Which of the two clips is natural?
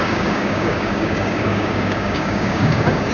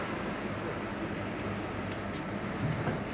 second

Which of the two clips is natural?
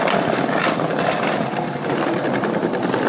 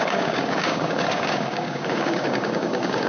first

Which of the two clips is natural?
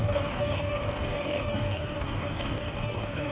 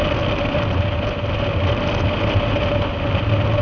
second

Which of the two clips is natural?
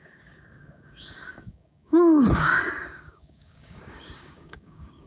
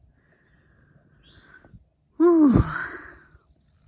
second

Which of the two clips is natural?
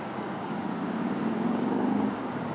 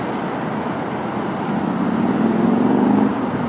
second